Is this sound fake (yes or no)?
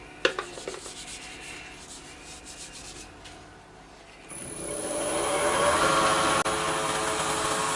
no